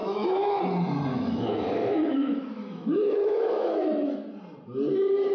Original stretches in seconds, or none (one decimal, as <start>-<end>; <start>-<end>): 0.6-1.1; 4.3-5.3